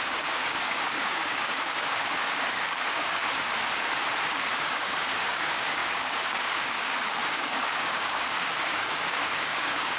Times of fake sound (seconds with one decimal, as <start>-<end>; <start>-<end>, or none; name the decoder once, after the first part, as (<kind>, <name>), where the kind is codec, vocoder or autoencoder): 0.0-3.2 (codec, DAC); 4.6-10.0